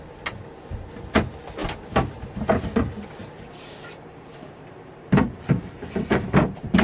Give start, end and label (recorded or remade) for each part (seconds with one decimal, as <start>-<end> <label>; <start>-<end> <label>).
0.0-3.2 recorded; 3.2-6.8 remade